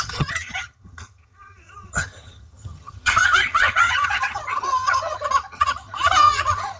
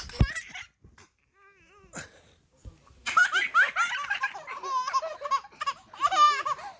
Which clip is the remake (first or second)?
first